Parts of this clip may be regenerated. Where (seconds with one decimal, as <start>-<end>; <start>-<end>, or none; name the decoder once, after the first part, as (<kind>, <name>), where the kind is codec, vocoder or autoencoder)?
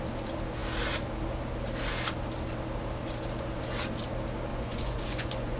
4.5-5.6 (vocoder, Vocos)